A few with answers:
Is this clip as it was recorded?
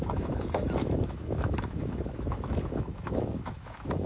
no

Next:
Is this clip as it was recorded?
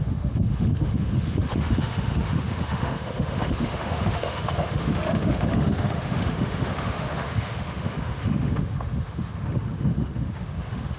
no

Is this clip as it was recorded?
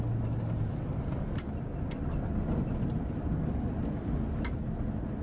yes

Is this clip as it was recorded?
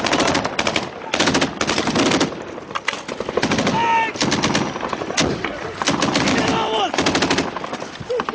yes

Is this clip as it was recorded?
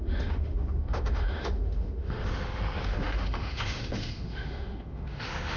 no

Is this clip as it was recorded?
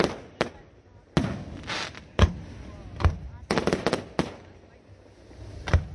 yes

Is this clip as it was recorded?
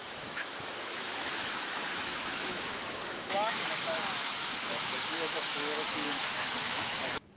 no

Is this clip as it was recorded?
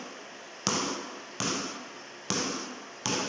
yes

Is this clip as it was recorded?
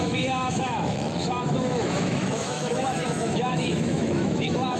no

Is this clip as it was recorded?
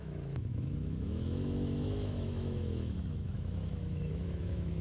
no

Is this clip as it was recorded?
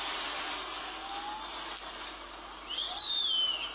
yes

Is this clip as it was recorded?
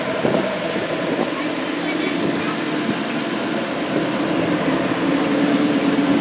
yes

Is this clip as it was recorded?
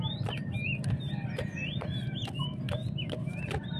yes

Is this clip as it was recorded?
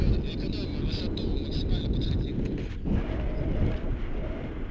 yes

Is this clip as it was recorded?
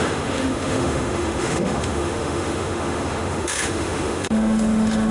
no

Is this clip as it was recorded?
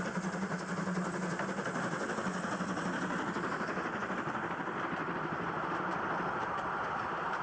yes